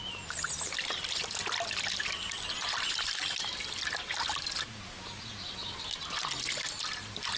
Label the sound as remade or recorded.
recorded